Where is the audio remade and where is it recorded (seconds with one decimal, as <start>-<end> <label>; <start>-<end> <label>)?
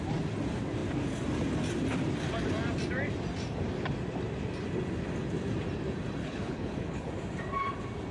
0.0-6.2 recorded; 6.2-7.1 remade; 7.1-8.1 recorded